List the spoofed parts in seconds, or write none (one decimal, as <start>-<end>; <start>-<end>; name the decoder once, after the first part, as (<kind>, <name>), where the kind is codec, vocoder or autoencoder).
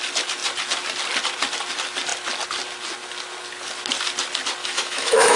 4.6-5.3 (autoencoder, DAC-VAE)